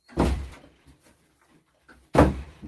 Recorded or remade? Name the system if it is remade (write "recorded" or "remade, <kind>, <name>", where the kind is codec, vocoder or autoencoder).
remade, vocoder, BigVGAN v2